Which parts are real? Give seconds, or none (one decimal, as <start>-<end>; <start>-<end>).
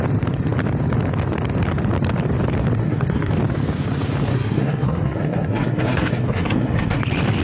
0.0-2.8; 3.3-4.3; 7.0-7.4